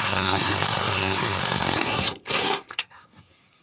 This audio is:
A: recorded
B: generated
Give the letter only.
B